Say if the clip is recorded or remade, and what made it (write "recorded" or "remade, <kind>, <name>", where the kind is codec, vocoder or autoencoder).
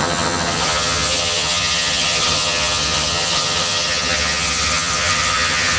remade, vocoder, HiFi-GAN